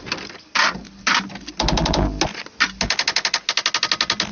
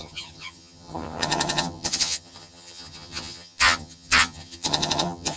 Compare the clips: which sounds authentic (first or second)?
first